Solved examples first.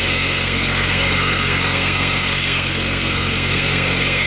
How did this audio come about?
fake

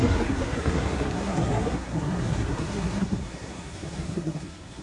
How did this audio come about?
fake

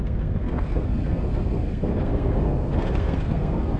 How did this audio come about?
fake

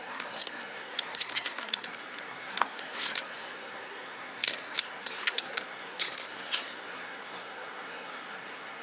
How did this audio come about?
fake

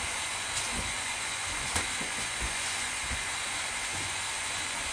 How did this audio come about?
fake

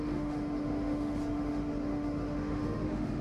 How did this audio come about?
fake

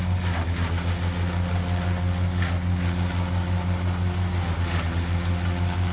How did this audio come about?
real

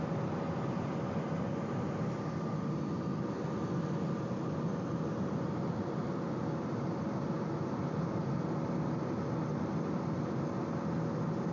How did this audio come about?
real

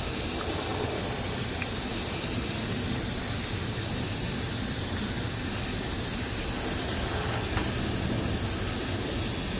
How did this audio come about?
real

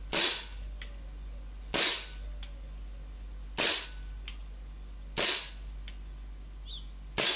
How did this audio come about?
real